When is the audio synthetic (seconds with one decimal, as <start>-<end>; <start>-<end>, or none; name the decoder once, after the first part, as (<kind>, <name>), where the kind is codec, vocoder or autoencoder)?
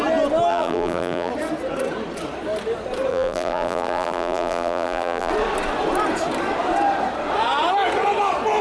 0.5-1.3 (vocoder, BigVGAN v2); 3.1-5.3